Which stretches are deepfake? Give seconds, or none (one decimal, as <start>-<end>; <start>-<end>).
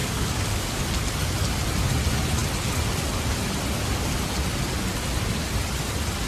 0.0-0.8